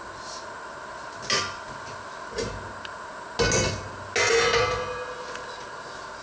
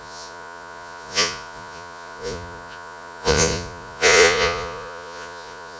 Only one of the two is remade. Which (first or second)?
second